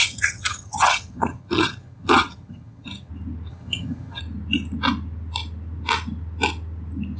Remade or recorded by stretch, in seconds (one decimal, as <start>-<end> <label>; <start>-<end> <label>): 0.0-3.1 remade; 3.1-3.5 recorded; 3.5-4.2 remade; 4.2-7.2 recorded